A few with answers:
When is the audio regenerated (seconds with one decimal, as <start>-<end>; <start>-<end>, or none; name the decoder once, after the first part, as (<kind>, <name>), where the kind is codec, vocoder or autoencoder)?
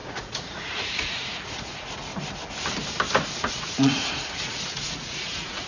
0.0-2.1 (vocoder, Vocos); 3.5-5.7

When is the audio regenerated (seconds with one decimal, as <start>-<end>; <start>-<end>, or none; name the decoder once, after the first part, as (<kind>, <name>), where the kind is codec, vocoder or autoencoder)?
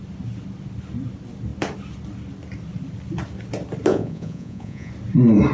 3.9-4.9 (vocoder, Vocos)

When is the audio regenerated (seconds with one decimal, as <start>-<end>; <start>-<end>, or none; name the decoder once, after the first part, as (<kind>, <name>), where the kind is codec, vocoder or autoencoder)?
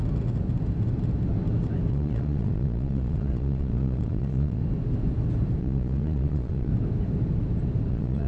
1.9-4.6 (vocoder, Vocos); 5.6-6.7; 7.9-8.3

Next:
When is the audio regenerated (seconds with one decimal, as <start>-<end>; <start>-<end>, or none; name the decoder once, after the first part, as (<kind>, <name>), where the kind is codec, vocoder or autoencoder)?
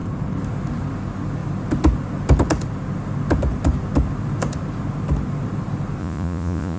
6.0-6.8 (vocoder, Vocos)